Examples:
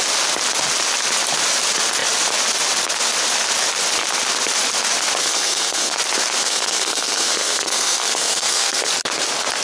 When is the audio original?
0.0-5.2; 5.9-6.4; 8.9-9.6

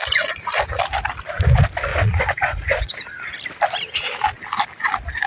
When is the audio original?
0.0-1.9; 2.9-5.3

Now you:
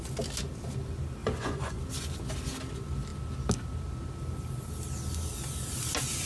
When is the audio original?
0.0-1.2; 1.8-6.3

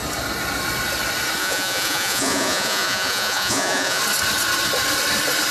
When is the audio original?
0.0-1.4; 4.0-5.5

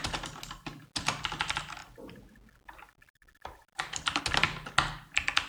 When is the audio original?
0.0-1.8; 4.2-5.5

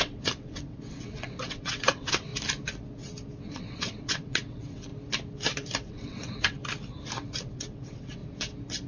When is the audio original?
2.3-3.4; 4.9-5.9; 6.6-7.4; 8.2-8.9